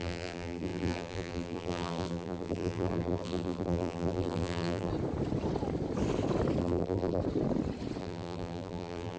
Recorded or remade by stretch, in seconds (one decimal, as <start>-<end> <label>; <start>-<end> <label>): 0.0-4.9 remade; 4.9-6.6 recorded; 6.6-7.2 remade; 7.2-8.0 recorded; 8.0-9.2 remade